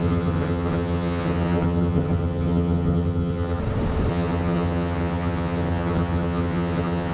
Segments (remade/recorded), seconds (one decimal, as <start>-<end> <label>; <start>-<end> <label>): 0.0-3.6 remade; 3.6-4.1 recorded; 4.1-7.1 remade